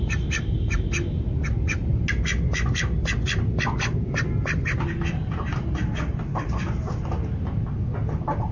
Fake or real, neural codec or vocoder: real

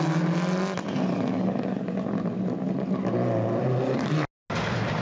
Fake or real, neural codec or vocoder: real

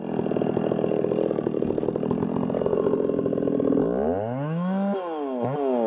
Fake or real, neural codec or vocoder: real